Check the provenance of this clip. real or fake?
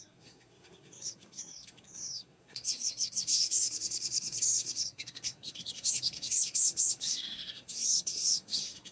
fake